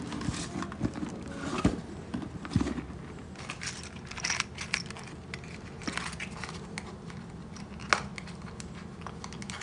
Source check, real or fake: real